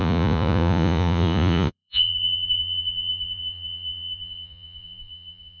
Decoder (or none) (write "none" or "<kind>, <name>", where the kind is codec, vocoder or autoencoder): vocoder, Vocos